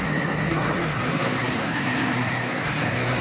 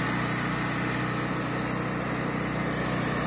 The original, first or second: second